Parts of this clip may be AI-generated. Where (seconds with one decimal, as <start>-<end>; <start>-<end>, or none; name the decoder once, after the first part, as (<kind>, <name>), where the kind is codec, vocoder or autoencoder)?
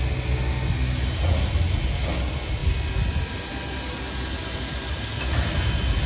none